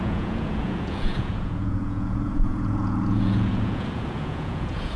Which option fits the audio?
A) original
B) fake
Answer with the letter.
B